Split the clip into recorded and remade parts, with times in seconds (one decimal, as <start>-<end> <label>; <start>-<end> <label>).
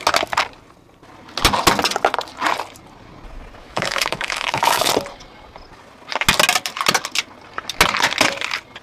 0.0-3.6 recorded; 3.6-4.9 remade; 4.9-8.8 recorded